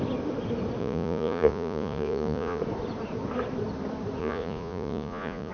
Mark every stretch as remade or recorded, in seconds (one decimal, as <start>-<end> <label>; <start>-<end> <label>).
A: 0.0-0.8 recorded; 0.8-2.6 remade; 2.6-4.2 recorded; 4.2-5.5 remade